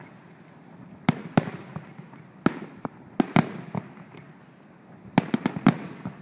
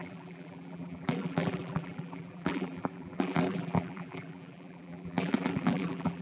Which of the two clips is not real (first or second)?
second